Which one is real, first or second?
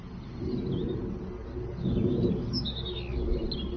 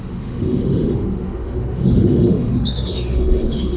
first